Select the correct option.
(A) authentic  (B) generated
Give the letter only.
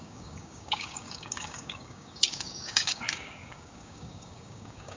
B